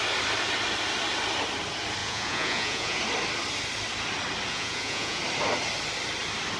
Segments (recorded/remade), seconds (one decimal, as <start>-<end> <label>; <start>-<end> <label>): 0.0-2.0 recorded; 2.0-3.0 remade; 3.0-4.5 recorded; 4.5-5.2 remade; 5.2-6.6 recorded